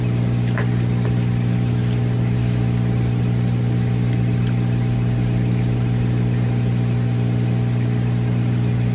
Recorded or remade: recorded